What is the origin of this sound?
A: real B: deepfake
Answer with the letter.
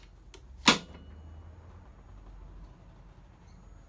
A